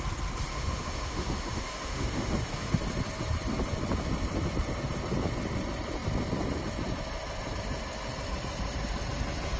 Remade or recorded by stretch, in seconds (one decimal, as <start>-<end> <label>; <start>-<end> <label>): 0.0-0.5 recorded; 0.5-2.7 remade; 2.7-9.6 recorded